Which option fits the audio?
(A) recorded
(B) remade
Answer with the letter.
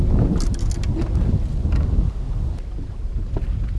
A